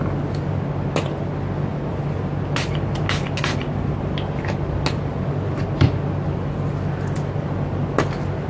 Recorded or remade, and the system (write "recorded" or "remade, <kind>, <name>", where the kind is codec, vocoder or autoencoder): recorded